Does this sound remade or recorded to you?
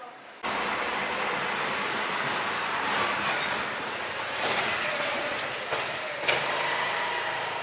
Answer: recorded